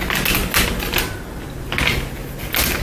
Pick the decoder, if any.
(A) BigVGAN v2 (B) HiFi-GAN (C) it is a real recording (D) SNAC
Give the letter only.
C